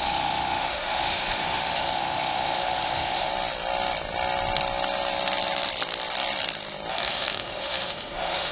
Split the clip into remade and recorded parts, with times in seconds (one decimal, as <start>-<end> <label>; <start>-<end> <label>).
0.0-3.3 remade; 3.3-6.9 recorded; 6.9-8.5 remade